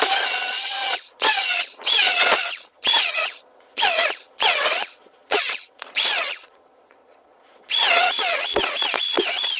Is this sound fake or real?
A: fake